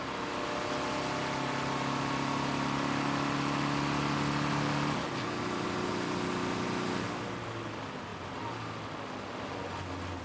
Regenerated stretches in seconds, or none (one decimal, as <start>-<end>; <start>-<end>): none